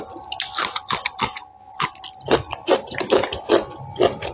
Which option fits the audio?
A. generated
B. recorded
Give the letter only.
B